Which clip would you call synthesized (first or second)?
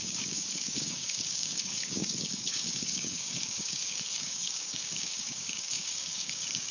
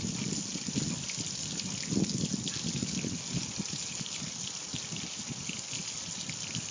first